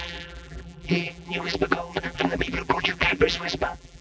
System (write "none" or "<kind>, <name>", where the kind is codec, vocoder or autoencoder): vocoder, BigVGAN v2